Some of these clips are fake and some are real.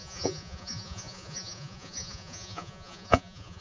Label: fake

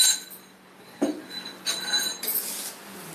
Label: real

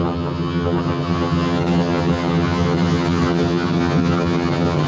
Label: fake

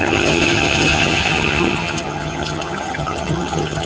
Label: fake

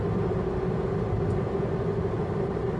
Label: real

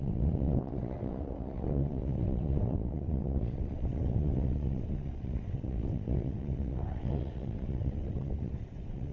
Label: fake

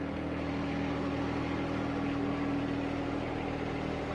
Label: real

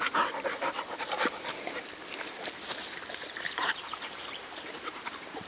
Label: fake